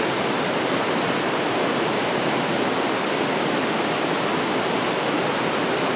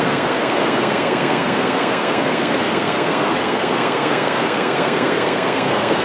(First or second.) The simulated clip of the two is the second